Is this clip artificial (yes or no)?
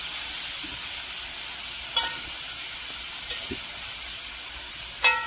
no